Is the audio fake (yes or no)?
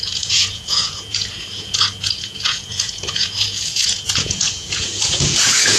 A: yes